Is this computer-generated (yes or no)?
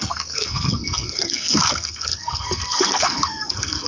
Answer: yes